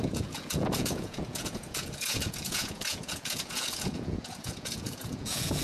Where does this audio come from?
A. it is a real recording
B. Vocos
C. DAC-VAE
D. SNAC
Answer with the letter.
B